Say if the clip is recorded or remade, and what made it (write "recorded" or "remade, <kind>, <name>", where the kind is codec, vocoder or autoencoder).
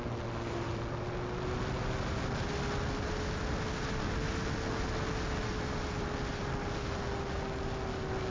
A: recorded